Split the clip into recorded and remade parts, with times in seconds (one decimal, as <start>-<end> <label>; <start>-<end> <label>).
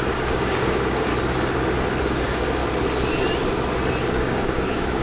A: 0.0-1.1 remade; 1.1-2.0 recorded; 2.0-2.6 remade; 2.6-4.2 recorded; 4.2-5.0 remade